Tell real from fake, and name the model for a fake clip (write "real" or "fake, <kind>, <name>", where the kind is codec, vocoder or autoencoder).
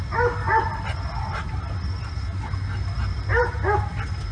real